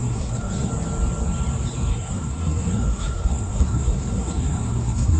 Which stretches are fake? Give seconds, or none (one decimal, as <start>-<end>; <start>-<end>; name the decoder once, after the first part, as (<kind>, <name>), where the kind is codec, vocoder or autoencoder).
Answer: 0.0-0.7 (codec, SNAC); 1.9-5.2